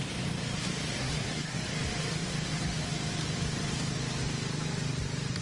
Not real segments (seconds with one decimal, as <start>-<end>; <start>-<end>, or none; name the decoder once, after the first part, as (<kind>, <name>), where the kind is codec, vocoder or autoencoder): 1.0-1.6 (codec, SNAC)